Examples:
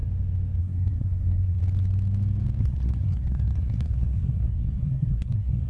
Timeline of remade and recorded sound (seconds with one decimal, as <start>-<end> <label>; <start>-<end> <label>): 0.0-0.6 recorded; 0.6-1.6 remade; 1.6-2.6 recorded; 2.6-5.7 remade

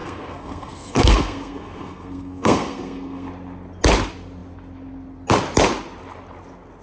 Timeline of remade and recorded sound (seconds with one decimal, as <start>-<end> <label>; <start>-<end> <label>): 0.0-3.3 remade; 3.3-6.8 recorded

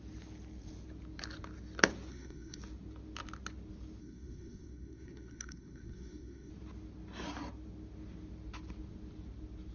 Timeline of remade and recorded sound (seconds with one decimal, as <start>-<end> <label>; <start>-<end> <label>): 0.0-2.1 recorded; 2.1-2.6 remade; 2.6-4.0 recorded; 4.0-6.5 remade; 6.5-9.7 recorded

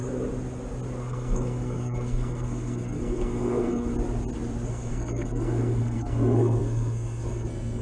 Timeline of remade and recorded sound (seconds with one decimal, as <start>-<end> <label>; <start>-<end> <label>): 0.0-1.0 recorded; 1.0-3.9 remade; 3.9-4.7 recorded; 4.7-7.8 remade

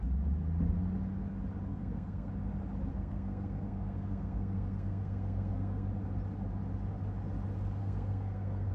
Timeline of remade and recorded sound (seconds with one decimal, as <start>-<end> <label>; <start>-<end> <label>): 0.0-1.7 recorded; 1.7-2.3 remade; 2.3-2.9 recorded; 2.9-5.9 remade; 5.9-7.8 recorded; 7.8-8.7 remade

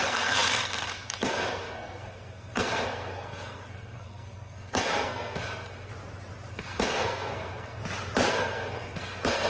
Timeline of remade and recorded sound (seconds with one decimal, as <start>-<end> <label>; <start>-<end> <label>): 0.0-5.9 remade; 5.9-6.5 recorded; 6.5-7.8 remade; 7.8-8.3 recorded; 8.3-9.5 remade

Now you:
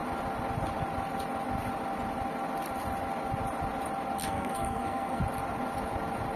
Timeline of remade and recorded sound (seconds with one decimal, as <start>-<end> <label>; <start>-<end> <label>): 0.0-4.2 recorded; 4.2-5.2 remade; 5.2-6.4 recorded